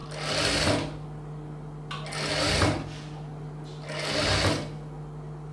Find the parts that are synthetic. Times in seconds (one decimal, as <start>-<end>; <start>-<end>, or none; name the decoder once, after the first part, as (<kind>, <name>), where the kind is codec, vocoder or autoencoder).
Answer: none